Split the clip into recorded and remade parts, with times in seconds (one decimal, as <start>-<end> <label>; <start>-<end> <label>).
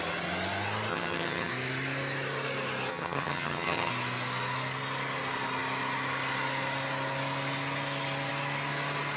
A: 0.0-0.9 recorded; 0.9-1.5 remade; 1.5-2.9 recorded; 2.9-3.9 remade; 3.9-9.2 recorded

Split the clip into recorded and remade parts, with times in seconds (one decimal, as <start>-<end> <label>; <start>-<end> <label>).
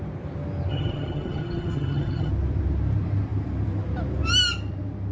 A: 0.0-0.7 recorded; 0.7-2.3 remade; 2.3-5.1 recorded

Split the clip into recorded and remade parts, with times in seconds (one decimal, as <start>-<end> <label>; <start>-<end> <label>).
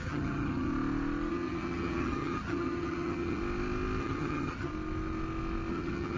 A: 0.0-0.7 remade; 0.7-1.3 recorded; 1.3-3.4 remade; 3.4-4.0 recorded; 4.0-4.7 remade; 4.7-5.7 recorded; 5.7-6.2 remade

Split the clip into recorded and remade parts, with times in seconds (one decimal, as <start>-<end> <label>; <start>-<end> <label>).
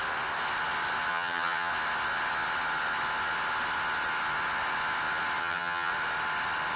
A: 0.0-1.1 recorded; 1.1-1.7 remade; 1.7-5.4 recorded; 5.4-5.9 remade; 5.9-6.8 recorded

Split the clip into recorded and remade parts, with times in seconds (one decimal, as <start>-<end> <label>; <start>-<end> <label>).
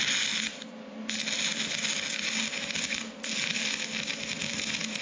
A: 0.0-5.0 recorded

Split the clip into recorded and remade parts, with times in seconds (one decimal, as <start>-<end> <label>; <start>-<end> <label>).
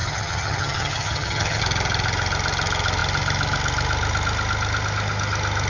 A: 0.0-1.6 remade; 1.6-5.7 recorded